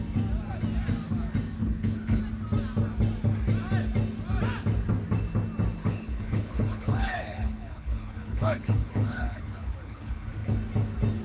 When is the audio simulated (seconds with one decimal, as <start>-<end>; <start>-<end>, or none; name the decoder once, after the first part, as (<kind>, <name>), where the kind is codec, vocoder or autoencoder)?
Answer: 1.6-2.2 (codec, HILCodec); 5.8-10.3